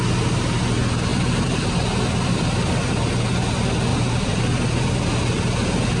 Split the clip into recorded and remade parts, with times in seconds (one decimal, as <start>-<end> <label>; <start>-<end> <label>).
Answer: 0.0-1.1 recorded; 1.1-3.1 remade; 3.1-3.9 recorded; 3.9-4.4 remade; 4.4-6.0 recorded

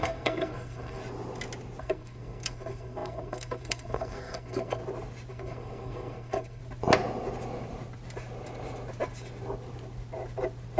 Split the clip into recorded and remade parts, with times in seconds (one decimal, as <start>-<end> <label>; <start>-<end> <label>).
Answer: 0.0-1.0 remade; 1.0-1.8 recorded; 1.8-4.8 remade; 4.8-5.3 recorded; 5.3-6.6 remade; 6.6-10.8 recorded

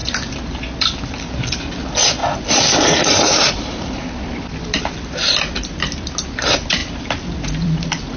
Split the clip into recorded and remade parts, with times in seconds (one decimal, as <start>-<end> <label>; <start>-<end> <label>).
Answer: 0.0-2.2 recorded; 2.2-4.8 remade; 4.8-6.8 recorded; 6.8-8.2 remade

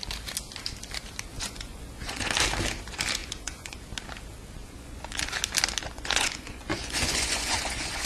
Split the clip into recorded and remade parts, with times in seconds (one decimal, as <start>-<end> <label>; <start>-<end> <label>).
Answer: 0.0-1.3 recorded; 1.3-2.3 remade; 2.3-3.2 recorded; 3.2-3.8 remade; 3.8-4.6 recorded; 4.6-5.3 remade; 5.3-5.8 recorded; 5.8-8.1 remade